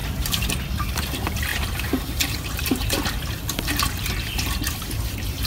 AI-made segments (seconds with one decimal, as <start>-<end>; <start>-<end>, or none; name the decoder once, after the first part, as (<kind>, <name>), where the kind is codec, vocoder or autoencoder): 0.0-0.5 (vocoder, BigVGAN v2); 1.5-2.8

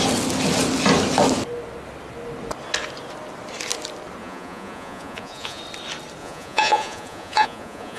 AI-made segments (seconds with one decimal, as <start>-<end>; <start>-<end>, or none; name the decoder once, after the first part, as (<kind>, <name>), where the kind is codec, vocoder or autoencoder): 4.2-5.6 (vocoder, Vocos); 6.2-8.0

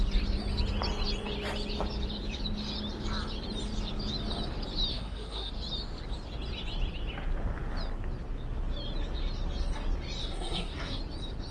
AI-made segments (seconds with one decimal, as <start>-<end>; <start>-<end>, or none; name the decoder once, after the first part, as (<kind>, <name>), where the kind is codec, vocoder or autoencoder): 4.9-5.5 (codec, SNAC); 10.2-11.0

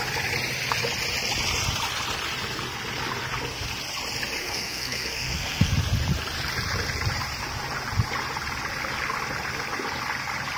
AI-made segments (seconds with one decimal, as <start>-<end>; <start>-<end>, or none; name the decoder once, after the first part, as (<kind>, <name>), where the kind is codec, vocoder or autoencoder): 4.4-5.7 (codec, SNAC)

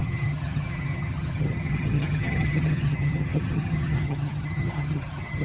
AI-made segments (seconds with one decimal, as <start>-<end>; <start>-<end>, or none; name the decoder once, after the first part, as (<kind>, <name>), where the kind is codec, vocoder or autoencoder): 0.0-5.4 (vocoder, HiFi-GAN)

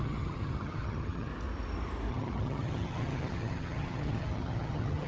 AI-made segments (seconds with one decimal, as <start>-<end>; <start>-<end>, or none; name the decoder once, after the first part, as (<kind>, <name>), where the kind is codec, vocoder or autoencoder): 0.0-1.3 (vocoder, HiFi-GAN); 2.1-5.1

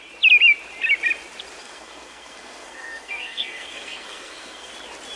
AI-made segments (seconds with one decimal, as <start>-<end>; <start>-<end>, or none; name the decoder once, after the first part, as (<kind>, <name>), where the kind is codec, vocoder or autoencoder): 1.6-4.7 (codec, SNAC)

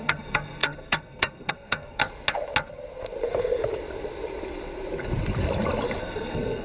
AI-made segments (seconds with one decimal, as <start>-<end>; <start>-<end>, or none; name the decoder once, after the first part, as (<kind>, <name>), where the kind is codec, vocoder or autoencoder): 0.0-2.0 (codec, SNAC); 6.0-6.6